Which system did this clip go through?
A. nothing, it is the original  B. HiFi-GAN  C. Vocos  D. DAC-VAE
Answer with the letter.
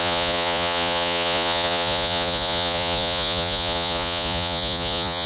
C